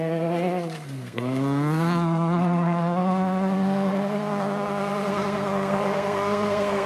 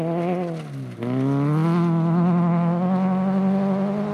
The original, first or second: second